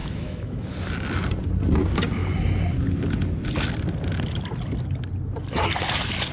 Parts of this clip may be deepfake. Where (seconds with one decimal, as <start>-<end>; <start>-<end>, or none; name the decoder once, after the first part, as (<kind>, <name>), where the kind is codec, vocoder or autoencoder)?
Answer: 0.0-0.7 (autoencoder, DAC-VAE)